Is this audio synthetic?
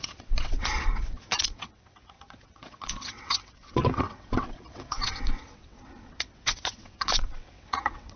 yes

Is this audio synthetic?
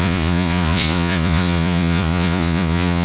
yes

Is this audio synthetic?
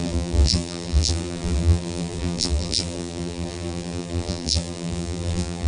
yes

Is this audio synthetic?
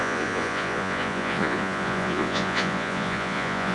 yes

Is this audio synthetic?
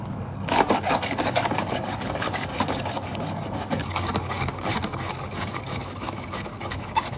yes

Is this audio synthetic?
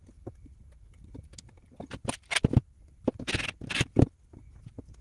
no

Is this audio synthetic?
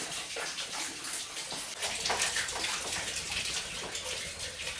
no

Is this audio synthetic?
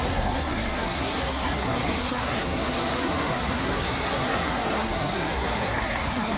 yes